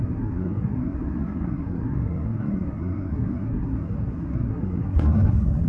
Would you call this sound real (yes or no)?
no